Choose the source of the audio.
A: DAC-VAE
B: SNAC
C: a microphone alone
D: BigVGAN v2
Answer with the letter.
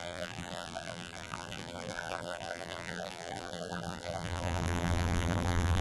D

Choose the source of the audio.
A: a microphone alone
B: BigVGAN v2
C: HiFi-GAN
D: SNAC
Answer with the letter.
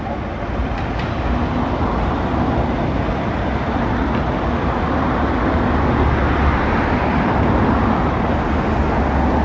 A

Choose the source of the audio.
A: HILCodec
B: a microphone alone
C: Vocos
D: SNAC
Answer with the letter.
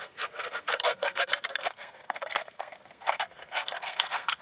D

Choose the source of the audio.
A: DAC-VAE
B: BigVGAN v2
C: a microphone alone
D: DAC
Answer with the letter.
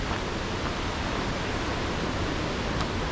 C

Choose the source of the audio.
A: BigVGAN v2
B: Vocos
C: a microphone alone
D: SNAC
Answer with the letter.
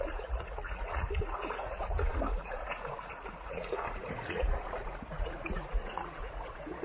B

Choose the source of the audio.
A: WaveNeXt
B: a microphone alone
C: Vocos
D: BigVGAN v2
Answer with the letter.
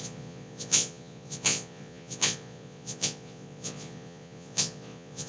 C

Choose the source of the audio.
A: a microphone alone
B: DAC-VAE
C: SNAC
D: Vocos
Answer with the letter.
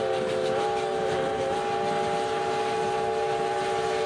A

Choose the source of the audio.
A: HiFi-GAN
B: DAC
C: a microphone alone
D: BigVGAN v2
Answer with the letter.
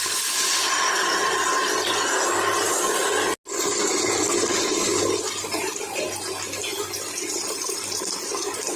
C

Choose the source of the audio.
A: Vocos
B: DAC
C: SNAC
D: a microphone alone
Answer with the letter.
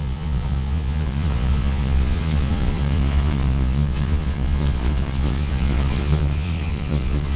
A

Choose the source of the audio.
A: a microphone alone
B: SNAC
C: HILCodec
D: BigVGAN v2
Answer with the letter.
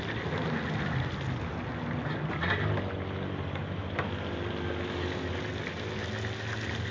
A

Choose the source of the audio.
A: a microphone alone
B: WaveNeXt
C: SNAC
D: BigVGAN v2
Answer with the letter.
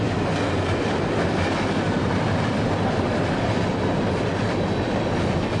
A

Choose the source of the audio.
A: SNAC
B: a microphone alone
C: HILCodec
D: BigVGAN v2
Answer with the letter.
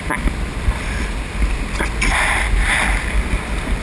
B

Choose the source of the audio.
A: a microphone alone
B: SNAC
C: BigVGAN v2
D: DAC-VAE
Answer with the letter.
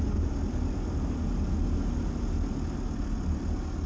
A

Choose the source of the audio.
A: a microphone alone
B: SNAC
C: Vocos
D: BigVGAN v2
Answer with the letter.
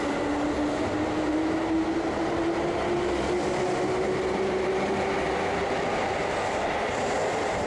A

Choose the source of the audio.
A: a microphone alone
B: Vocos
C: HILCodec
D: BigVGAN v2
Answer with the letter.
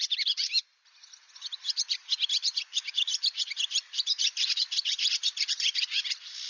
D